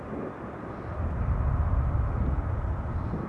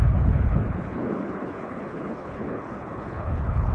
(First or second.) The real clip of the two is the first